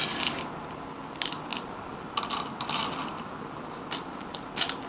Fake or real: real